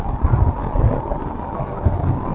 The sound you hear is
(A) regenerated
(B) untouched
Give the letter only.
B